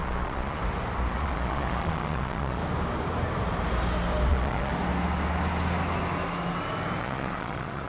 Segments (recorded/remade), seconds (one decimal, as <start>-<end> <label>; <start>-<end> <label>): 0.0-0.6 remade; 0.6-1.1 recorded; 1.1-2.6 remade; 2.6-4.3 recorded; 4.3-4.7 remade; 4.7-7.0 recorded; 7.0-7.9 remade